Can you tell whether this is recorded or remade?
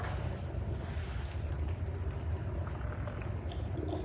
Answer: recorded